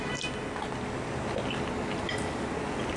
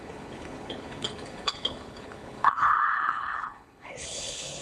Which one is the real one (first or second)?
first